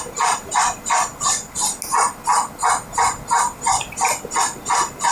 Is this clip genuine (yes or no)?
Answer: yes